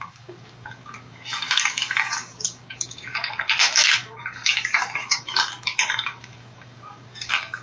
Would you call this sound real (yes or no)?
no